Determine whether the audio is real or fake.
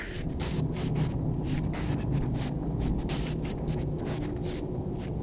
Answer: real